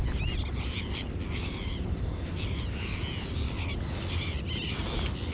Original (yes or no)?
yes